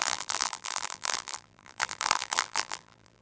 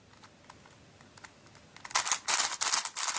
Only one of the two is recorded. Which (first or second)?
second